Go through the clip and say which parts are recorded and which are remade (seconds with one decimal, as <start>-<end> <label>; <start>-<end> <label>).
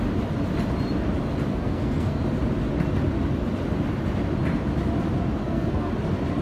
0.0-1.5 recorded; 1.5-2.2 remade; 2.2-5.4 recorded; 5.4-5.9 remade; 5.9-6.4 recorded